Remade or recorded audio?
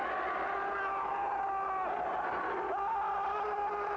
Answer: recorded